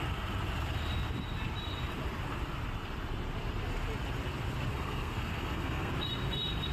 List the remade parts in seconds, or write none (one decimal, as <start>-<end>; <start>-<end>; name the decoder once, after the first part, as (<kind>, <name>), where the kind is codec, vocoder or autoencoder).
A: 4.7-5.9 (codec, SNAC)